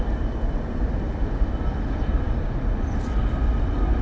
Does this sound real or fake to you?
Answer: real